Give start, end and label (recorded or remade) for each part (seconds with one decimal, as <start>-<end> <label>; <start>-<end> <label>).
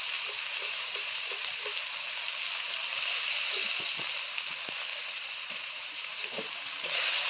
0.0-0.6 recorded; 0.6-1.6 remade; 1.6-4.9 recorded; 4.9-6.4 remade; 6.4-7.3 recorded